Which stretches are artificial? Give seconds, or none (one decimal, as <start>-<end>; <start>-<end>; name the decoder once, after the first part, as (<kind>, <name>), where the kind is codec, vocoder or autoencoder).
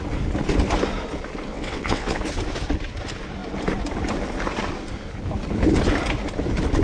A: 1.5-2.2 (vocoder, WaveNeXt)